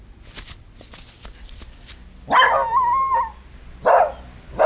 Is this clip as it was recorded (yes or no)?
yes